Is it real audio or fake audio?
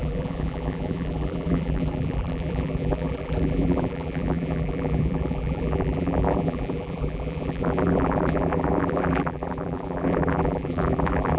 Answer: fake